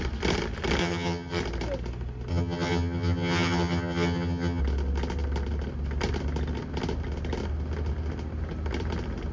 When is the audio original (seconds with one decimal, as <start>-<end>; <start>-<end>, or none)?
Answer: 0.0-0.8; 1.4-2.3; 4.6-9.3